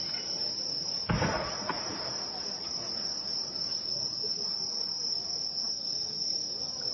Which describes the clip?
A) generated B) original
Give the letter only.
B